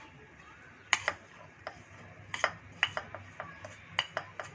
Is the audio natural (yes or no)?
yes